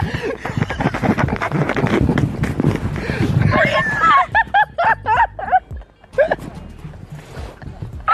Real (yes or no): yes